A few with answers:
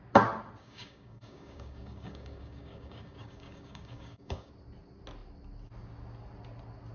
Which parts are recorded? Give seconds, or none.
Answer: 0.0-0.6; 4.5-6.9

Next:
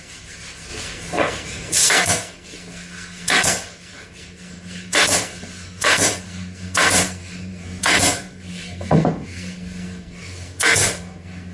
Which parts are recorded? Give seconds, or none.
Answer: none

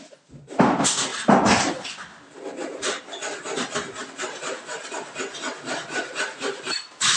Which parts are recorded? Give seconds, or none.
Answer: 0.0-7.2